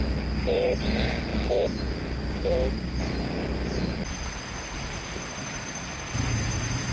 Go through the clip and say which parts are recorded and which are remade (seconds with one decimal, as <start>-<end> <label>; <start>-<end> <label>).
0.0-6.9 recorded